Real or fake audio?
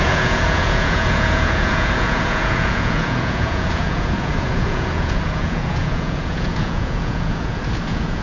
fake